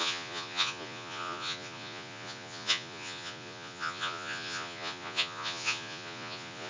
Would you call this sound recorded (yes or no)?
no